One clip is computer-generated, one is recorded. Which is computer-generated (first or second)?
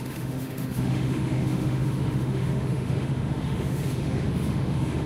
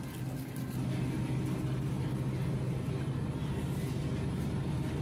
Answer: first